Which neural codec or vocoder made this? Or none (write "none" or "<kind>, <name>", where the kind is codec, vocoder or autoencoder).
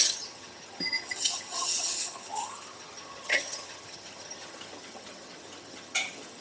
vocoder, HiFi-GAN